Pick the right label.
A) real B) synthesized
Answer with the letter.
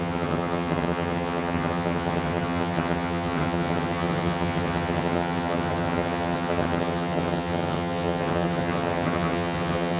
B